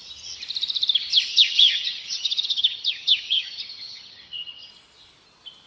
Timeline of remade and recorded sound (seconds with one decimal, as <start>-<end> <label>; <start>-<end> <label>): 0.0-1.3 recorded; 1.3-4.7 remade; 4.7-5.7 recorded